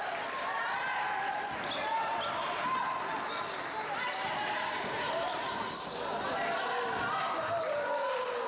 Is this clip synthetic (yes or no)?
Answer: no